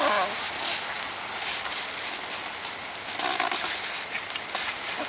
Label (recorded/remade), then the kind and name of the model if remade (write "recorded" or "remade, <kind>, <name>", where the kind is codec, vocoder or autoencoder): recorded